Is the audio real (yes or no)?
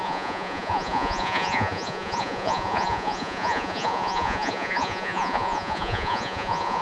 no